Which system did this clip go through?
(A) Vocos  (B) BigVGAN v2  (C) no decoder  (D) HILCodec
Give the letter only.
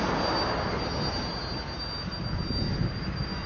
C